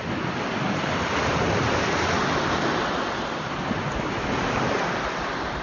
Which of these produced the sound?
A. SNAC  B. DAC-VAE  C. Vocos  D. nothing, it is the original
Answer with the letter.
D